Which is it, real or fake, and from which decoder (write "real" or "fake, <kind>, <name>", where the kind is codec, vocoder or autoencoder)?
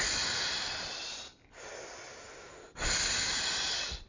real